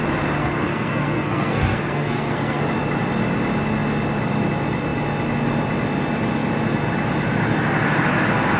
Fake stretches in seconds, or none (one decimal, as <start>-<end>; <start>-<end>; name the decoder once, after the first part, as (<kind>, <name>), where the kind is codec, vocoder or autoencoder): 0.4-2.6 (codec, SNAC)